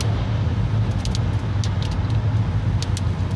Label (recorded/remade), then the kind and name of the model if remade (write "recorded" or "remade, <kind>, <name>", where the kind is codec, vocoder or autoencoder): recorded